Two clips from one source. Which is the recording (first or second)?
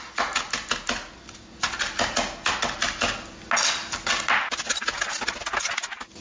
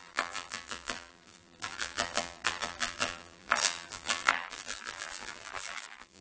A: first